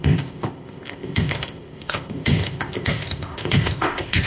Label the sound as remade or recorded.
remade